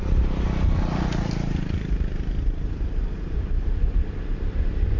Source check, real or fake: fake